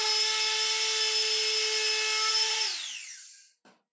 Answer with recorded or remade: recorded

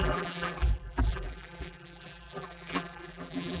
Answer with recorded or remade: remade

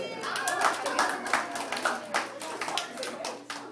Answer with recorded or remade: recorded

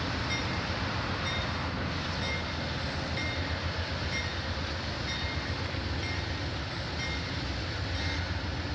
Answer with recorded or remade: recorded